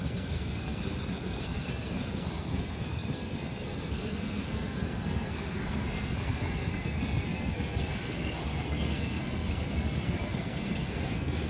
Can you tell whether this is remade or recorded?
remade